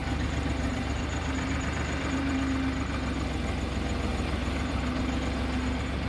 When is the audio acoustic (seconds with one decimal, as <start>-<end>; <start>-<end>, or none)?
2.4-4.1; 5.0-6.1